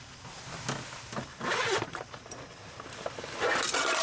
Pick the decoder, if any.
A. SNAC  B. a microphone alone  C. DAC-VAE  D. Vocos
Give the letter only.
B